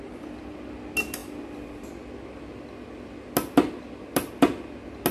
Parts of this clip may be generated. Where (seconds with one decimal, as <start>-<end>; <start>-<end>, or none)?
none